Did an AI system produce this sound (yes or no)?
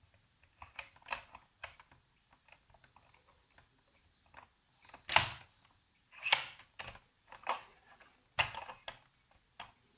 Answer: no